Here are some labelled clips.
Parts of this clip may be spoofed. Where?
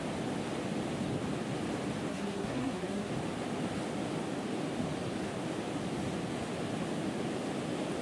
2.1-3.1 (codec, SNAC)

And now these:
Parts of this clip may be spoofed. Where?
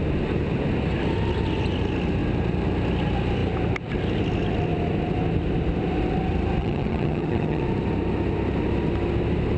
6.6-7.6 (vocoder, HiFi-GAN)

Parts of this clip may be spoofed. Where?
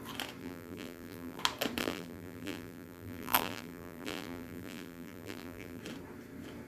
0.4-1.4 (vocoder, BigVGAN v2); 1.8-5.8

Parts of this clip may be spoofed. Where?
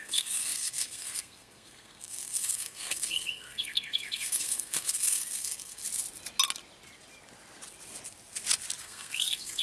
0.0-5.8 (codec, SNAC); 8.8-9.6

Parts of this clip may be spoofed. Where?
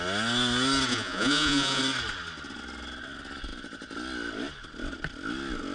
0.9-1.8 (vocoder, Vocos)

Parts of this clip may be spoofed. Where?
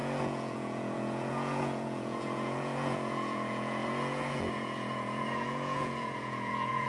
0.0-6.9 (vocoder, Vocos)